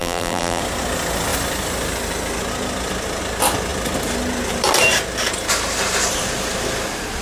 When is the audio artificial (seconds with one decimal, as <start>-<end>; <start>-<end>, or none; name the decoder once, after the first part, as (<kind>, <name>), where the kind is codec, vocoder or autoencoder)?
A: 0.0-0.6 (vocoder, BigVGAN v2)